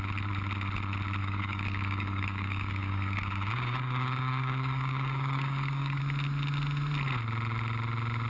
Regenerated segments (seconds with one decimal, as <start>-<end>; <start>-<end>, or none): 1.2-6.0